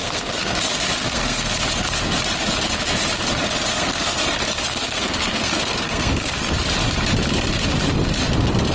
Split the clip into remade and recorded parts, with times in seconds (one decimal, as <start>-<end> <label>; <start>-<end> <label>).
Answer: 0.0-0.6 remade; 0.6-1.0 recorded; 1.0-1.5 remade; 1.5-3.7 recorded; 3.7-4.2 remade; 4.2-4.7 recorded; 4.7-6.3 remade; 6.3-8.7 recorded